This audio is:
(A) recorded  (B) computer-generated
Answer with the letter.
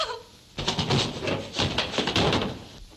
A